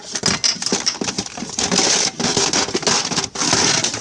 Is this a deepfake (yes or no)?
no